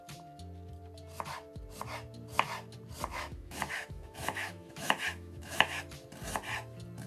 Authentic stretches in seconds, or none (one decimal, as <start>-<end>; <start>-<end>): 0.0-3.1; 5.8-7.1